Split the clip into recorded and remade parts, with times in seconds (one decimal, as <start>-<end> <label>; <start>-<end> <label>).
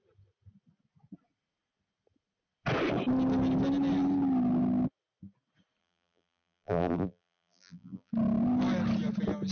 0.0-5.8 recorded; 5.8-8.1 remade; 8.1-9.5 recorded